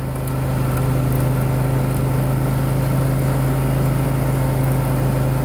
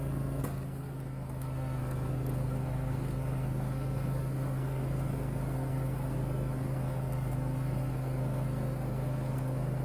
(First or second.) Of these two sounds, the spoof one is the second